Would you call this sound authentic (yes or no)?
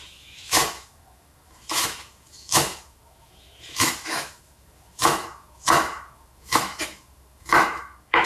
no